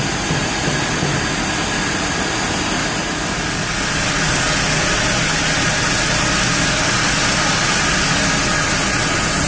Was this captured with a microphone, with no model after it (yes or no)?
yes